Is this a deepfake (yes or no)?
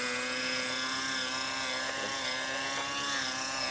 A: no